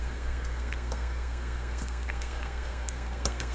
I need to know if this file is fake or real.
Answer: fake